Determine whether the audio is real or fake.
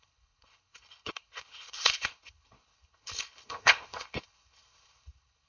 fake